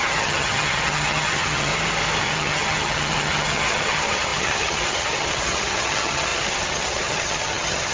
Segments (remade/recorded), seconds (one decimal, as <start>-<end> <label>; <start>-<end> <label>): 0.0-1.7 remade; 1.7-2.2 recorded; 2.2-7.9 remade